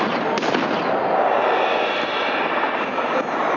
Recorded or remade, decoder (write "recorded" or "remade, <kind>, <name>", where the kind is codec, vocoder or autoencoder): recorded